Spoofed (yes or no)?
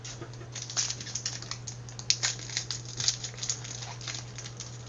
no